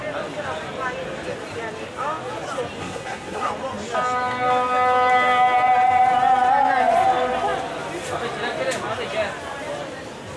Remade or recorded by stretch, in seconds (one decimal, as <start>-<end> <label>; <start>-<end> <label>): 0.0-2.8 recorded; 2.8-3.5 remade; 3.5-10.4 recorded